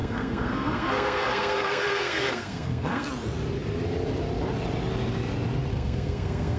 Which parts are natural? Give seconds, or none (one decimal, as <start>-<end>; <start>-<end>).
3.1-5.7